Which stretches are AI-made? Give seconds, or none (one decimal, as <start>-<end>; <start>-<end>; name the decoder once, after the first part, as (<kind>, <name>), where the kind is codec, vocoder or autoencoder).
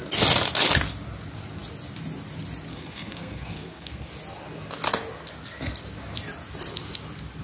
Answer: 2.7-4.1 (codec, SNAC)